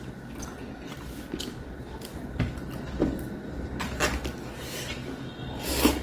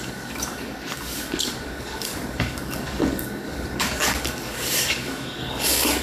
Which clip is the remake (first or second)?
second